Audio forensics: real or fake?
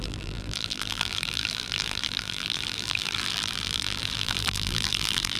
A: fake